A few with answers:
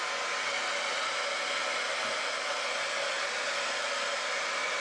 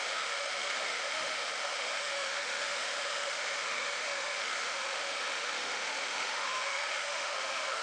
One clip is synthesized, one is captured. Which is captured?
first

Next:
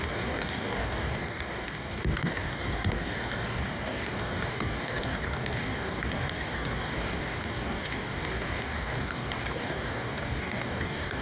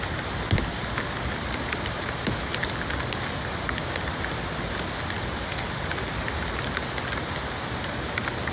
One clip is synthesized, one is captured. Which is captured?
second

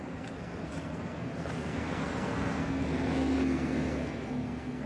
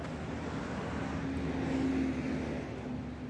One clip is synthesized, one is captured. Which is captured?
second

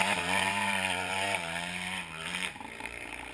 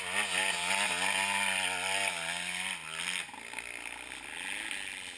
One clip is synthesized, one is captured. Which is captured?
second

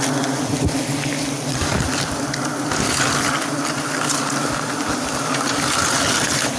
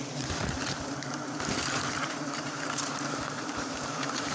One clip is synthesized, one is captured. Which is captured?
first